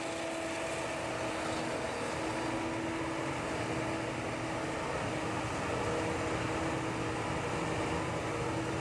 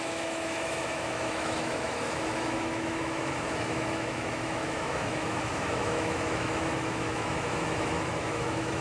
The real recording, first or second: first